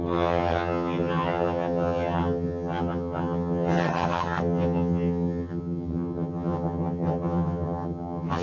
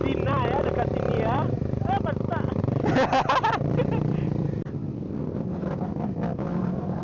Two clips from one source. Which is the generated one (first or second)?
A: first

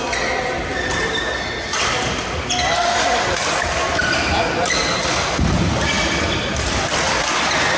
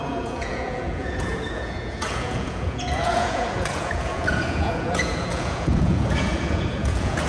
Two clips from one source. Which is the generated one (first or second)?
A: second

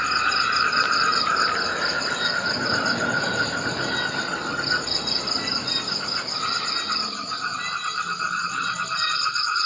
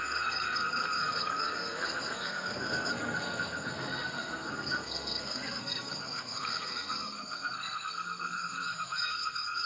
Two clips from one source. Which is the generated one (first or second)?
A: second